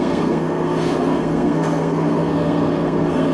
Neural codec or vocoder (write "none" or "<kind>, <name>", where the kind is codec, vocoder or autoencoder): codec, SNAC